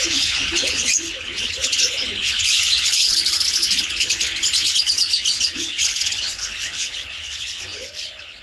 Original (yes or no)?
no